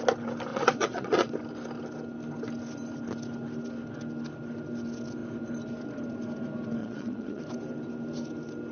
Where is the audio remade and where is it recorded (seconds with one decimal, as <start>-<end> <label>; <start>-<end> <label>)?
0.0-0.5 recorded; 0.5-1.3 remade; 1.3-6.8 recorded; 6.8-7.4 remade; 7.4-8.7 recorded